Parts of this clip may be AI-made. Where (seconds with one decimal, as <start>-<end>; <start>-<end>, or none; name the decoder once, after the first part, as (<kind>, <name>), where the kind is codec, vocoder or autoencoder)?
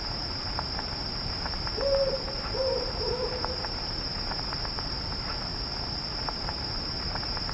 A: 0.0-5.5 (vocoder, BigVGAN v2); 6.2-7.5